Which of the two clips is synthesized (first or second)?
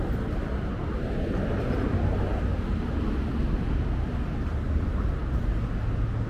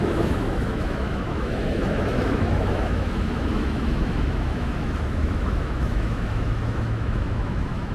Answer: second